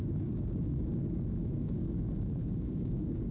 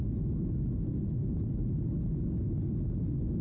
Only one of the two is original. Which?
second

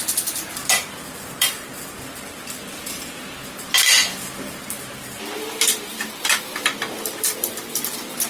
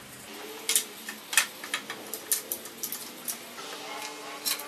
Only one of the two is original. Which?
second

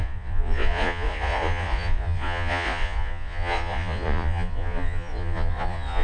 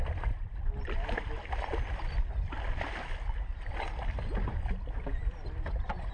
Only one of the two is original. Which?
second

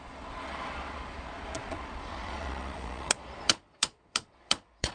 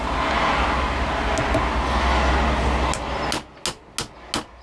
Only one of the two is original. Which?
second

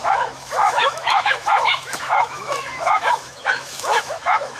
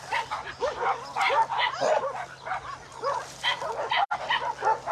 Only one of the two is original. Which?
second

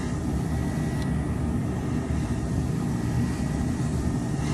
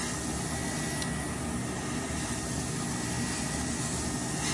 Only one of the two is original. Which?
second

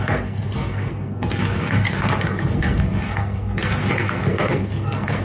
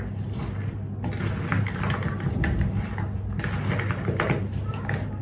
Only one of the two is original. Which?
second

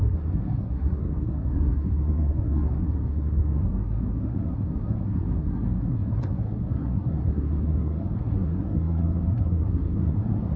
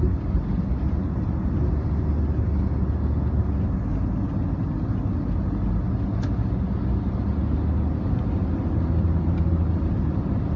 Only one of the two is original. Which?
second